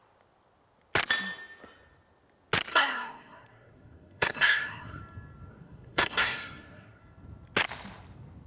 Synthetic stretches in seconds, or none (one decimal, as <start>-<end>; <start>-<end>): 2.7-5.0; 5.5-7.0